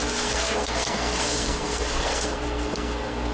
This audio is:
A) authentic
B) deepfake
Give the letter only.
B